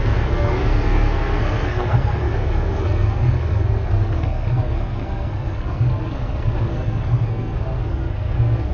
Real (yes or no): no